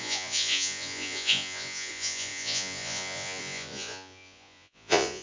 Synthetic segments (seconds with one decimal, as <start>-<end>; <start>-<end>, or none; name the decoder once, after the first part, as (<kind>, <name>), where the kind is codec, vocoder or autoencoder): 0.0-5.2 (vocoder, Vocos)